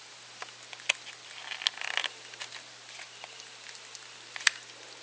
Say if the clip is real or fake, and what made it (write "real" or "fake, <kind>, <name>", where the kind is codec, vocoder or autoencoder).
real